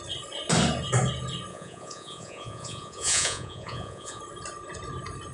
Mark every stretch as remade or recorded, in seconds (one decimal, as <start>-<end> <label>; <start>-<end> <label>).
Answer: 0.0-1.5 recorded; 1.5-4.2 remade; 4.2-5.3 recorded